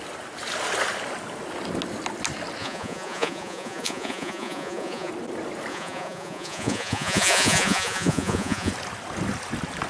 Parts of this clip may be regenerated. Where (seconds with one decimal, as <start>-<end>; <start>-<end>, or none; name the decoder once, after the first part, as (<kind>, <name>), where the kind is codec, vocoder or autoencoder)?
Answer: 2.6-5.1 (vocoder, Vocos); 5.7-8.7